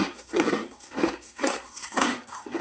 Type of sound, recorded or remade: remade